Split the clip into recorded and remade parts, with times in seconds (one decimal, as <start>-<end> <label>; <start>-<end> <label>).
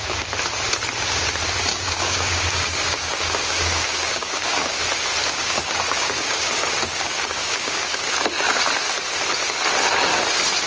0.0-1.7 recorded; 1.7-4.8 remade; 4.8-5.2 recorded; 5.2-8.1 remade; 8.1-10.7 recorded